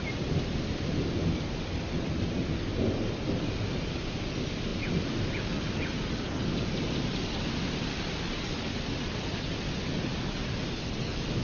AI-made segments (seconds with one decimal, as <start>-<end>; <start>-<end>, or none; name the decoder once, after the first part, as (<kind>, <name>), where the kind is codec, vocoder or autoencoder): none